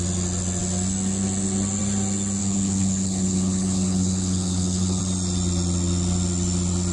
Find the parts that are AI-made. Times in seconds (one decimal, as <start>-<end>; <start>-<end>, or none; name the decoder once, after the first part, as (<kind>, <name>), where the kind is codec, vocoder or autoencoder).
2.4-5.0 (codec, HILCodec)